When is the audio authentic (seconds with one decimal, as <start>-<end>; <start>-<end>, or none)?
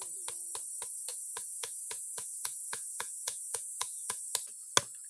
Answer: 0.0-1.1; 4.2-5.1